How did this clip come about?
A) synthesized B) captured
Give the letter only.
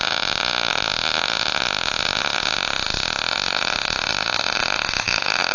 B